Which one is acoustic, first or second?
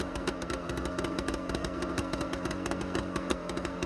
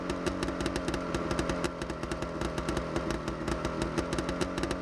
second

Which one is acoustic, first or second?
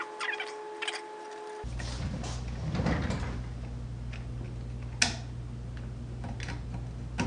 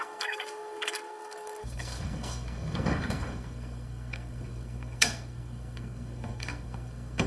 first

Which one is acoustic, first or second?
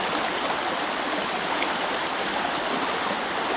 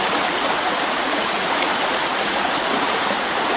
first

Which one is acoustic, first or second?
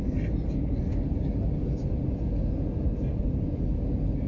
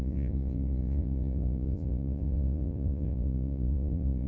first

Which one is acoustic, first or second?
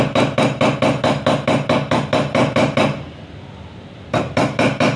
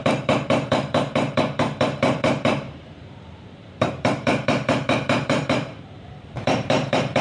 first